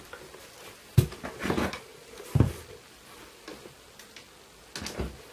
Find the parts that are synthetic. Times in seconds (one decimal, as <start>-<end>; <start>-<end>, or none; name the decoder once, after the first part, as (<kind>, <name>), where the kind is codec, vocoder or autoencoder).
none